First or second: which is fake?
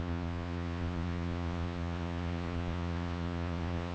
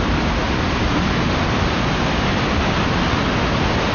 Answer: first